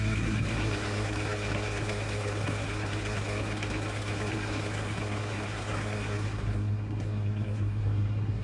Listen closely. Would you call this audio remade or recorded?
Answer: remade